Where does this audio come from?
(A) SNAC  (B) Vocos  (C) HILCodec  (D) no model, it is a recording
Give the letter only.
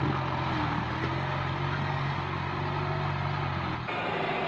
D